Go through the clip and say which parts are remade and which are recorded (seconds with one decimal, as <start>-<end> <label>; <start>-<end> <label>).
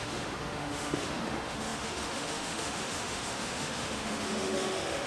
0.0-5.1 remade